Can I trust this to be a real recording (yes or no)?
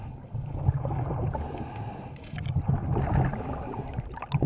yes